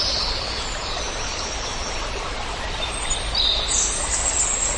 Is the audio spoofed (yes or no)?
no